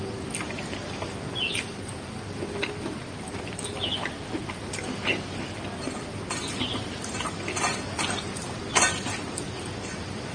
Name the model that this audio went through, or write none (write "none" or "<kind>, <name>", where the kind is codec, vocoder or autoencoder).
none